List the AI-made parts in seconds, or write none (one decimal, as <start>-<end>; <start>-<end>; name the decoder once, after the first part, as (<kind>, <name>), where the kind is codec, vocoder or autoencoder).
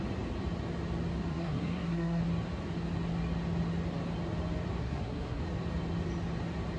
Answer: 1.3-2.2 (codec, SNAC); 4.8-5.4